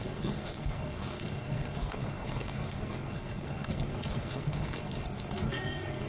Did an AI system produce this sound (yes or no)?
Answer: yes